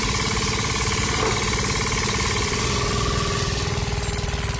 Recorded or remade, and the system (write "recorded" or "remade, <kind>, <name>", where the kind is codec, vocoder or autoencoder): recorded